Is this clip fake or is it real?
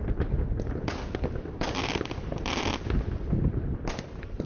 real